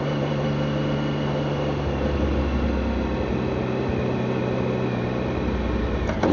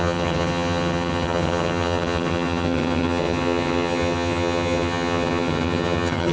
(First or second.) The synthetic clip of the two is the second